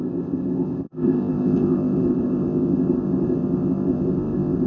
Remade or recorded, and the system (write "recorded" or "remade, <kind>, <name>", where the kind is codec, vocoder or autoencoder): remade, codec, ZipCodec